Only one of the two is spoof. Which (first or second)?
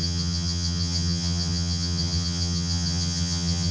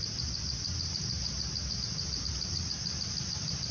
first